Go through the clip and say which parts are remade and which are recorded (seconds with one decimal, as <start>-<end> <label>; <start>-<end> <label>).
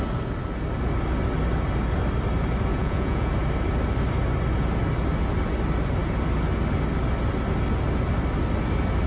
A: 0.0-2.7 recorded; 2.7-3.3 remade; 3.3-9.1 recorded